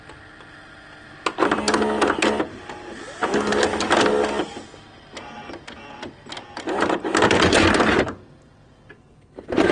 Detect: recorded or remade recorded